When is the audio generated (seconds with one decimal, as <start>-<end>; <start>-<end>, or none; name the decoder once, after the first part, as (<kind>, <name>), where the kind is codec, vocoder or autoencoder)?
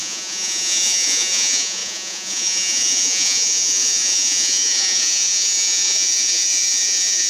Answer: 0.0-7.3 (vocoder, Vocos)